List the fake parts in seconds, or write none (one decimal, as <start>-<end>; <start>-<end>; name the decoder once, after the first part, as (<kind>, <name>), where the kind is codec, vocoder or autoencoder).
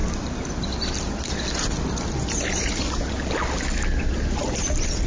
none